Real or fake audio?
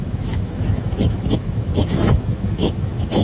fake